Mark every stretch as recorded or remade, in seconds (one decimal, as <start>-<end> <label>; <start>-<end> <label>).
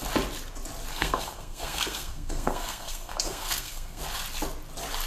0.0-0.9 recorded; 0.9-4.0 remade; 4.0-5.1 recorded